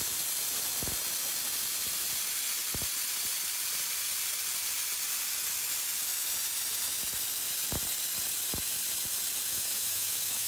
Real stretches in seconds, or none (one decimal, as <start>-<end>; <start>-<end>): 0.0-9.5